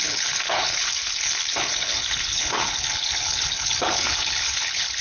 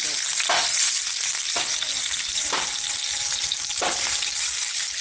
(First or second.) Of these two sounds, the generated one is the first